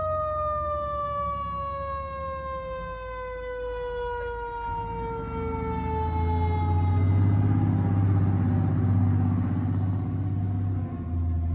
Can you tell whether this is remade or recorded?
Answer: recorded